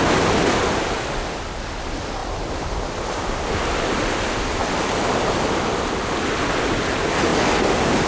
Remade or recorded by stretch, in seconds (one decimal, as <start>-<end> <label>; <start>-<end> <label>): 0.0-2.2 recorded; 2.2-3.5 remade; 3.5-8.1 recorded